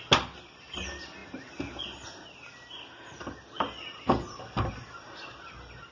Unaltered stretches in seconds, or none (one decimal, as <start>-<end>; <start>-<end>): 0.0-5.9